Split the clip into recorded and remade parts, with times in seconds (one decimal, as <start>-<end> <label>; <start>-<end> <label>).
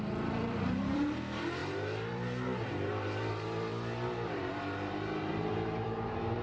0.0-6.4 remade